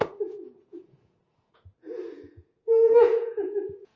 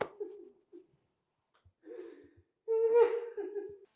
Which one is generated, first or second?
first